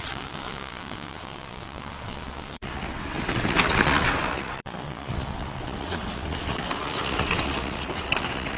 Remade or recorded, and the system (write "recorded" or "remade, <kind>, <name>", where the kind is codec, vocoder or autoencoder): remade, vocoder, WaveNeXt